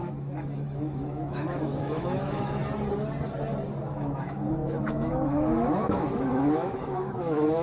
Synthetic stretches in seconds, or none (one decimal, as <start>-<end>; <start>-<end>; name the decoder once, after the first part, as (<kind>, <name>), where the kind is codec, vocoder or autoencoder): 0.0-2.6 (autoencoder, DAC-VAE); 3.8-7.6